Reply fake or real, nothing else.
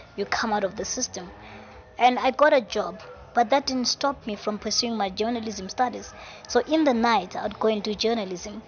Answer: real